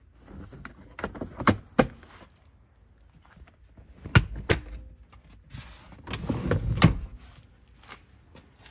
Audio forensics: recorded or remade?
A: recorded